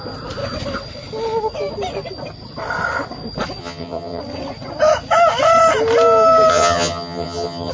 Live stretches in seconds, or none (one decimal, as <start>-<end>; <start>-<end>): 0.0-3.6; 4.2-6.5